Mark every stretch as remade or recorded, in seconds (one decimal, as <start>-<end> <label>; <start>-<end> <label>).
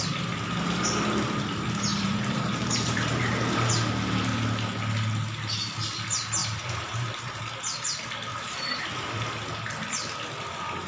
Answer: 0.0-1.9 recorded; 1.9-3.7 remade; 3.7-6.4 recorded; 6.4-7.4 remade; 7.4-8.3 recorded; 8.3-8.8 remade; 8.8-10.9 recorded